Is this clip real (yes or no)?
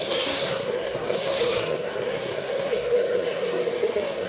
no